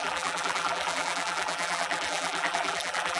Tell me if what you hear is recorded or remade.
remade